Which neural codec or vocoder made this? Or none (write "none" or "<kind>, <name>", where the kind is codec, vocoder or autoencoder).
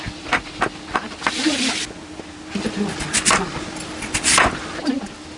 none